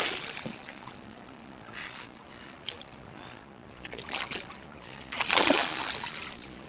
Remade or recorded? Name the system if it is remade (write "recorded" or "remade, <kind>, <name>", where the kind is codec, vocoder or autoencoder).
remade, vocoder, Vocos